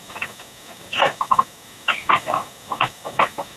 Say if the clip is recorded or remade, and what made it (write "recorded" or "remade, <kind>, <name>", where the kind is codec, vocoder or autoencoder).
remade, codec, DAC